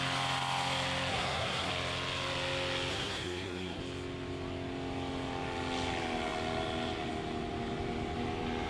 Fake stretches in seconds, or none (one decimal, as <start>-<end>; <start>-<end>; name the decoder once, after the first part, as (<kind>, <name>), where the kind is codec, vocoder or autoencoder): 1.1-1.7 (codec, SNAC); 2.9-3.8